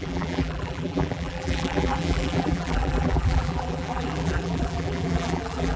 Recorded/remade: remade